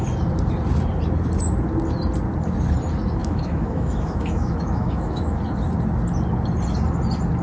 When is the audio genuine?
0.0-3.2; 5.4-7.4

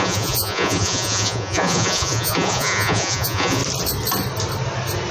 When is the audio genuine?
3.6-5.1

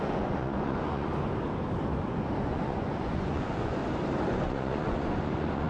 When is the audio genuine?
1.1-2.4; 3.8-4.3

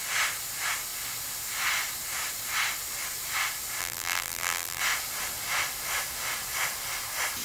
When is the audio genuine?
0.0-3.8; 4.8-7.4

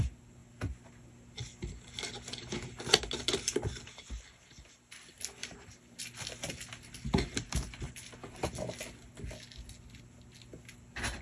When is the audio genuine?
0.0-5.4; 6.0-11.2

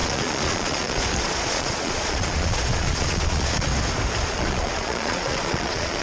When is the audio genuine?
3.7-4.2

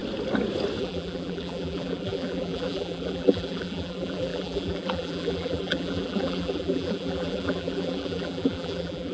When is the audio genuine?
0.0-0.8

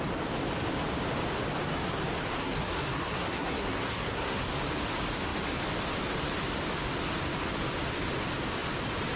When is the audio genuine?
0.0-2.4; 4.4-9.2